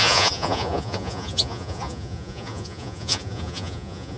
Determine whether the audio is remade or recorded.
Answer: remade